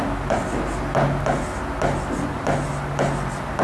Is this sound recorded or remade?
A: recorded